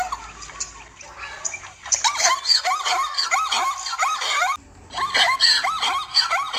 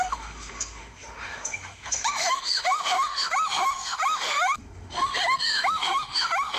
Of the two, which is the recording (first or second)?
first